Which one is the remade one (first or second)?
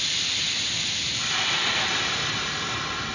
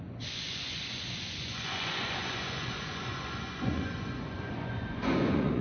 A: second